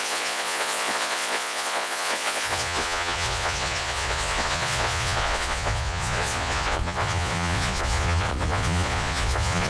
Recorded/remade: remade